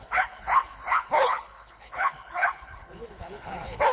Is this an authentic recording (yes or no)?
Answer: no